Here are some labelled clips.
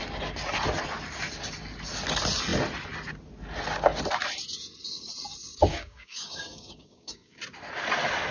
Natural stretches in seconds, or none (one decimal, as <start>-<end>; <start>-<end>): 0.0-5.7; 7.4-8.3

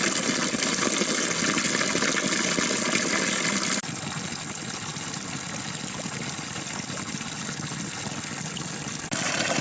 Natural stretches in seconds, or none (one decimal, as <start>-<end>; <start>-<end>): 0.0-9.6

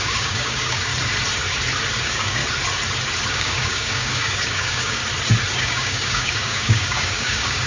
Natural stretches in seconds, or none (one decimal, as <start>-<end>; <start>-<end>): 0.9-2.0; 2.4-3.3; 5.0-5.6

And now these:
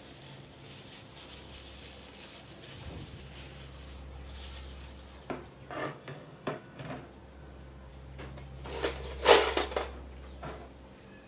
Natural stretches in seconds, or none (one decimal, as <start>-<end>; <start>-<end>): 0.0-5.8; 6.8-11.3